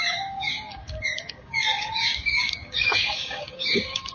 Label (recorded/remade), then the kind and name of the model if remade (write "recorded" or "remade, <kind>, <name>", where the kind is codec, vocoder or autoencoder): remade, codec, DAC